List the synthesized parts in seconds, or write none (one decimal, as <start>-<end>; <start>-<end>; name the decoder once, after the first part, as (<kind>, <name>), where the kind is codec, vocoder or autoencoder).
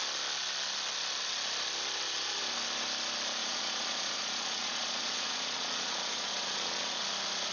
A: 3.4-7.0 (vocoder, Vocos)